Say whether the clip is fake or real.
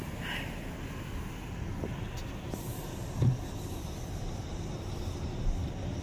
real